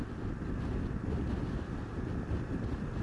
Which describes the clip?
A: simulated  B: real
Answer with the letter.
B